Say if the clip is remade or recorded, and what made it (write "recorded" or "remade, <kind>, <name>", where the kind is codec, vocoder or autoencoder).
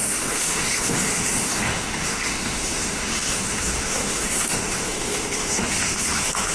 remade, autoencoder, DAC-VAE